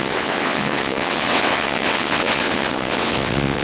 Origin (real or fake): fake